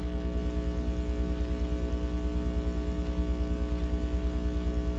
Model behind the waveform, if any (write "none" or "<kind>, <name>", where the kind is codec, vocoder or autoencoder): none